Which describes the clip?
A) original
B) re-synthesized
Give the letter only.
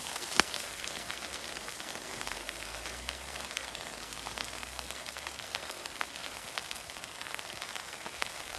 B